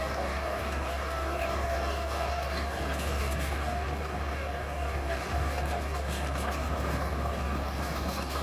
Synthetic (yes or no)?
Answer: yes